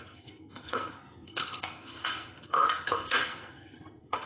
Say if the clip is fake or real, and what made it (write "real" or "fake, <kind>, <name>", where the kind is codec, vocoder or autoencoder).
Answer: fake, codec, SNAC